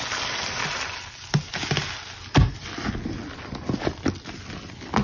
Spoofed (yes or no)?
no